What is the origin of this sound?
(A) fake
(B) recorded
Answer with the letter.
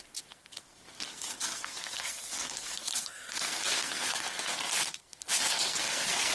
A